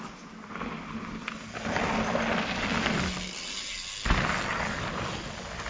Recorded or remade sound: recorded